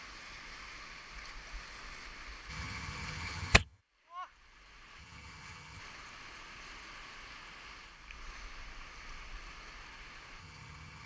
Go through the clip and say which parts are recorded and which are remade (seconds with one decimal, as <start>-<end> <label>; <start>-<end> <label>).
0.0-2.5 recorded; 2.5-3.8 remade; 3.8-5.0 recorded; 5.0-5.8 remade; 5.8-10.4 recorded; 10.4-11.1 remade